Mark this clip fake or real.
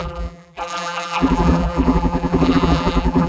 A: fake